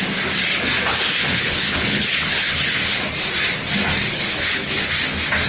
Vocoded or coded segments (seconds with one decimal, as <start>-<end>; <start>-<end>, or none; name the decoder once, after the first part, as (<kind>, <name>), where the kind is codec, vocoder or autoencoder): 0.9-3.0 (codec, HILCodec); 4.0-4.9